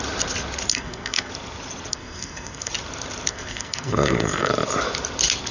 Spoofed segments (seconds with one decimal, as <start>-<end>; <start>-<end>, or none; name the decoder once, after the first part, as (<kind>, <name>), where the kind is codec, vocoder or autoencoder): 0.7-1.3 (codec, SNAC); 1.9-2.7; 3.3-4.5